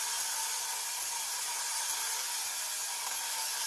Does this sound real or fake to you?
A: real